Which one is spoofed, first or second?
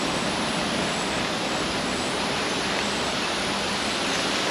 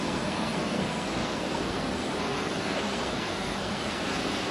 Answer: second